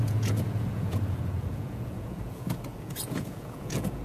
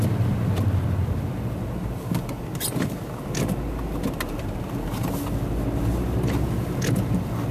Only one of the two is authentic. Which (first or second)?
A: second